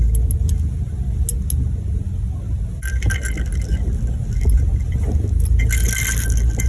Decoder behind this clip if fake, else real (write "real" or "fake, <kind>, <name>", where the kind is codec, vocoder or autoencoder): real